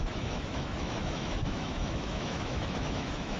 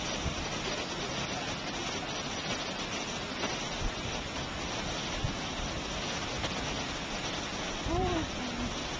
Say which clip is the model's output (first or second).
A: first